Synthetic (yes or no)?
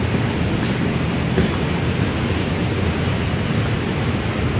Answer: yes